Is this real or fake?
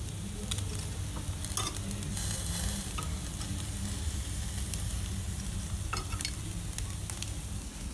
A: real